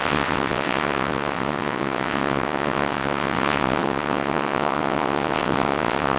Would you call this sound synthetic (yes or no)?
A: yes